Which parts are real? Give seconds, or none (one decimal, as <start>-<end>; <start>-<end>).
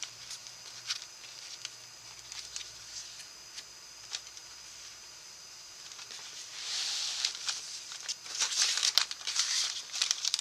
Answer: 0.4-4.0